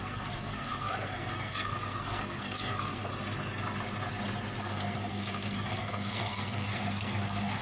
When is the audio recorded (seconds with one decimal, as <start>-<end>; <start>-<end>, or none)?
3.1-4.6